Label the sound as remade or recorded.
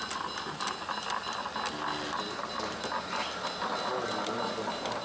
recorded